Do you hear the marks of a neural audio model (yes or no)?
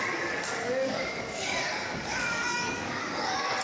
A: yes